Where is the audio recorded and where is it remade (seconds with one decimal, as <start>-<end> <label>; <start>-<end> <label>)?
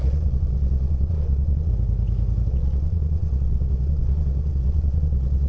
0.0-1.7 remade; 1.7-2.5 recorded; 2.5-5.5 remade